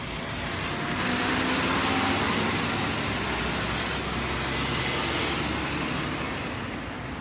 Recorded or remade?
recorded